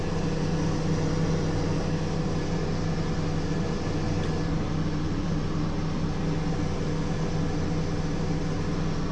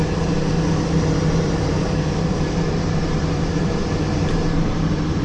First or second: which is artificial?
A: second